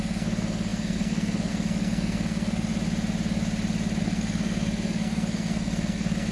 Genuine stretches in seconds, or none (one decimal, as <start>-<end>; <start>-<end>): 2.7-4.0